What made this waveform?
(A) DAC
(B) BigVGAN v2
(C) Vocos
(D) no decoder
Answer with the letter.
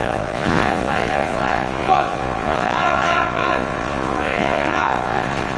C